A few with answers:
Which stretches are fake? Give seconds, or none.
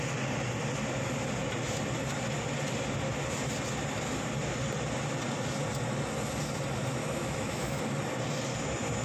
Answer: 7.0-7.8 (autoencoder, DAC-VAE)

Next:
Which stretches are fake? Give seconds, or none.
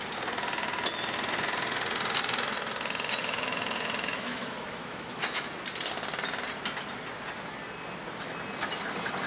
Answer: 3.2-5.5 (autoencoder, DAC-VAE)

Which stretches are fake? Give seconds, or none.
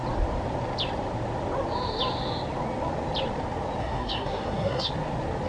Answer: 3.8-4.9 (codec, SNAC)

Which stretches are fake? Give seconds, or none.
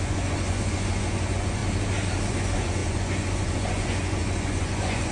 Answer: 0.0-1.6 (vocoder, Vocos); 2.3-5.1